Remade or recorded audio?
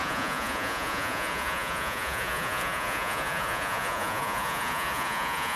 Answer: remade